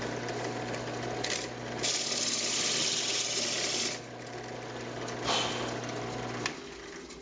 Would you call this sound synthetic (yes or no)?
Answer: no